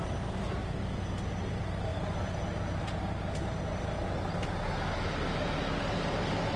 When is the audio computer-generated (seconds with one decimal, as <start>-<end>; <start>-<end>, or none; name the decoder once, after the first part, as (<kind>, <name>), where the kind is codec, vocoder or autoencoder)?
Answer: none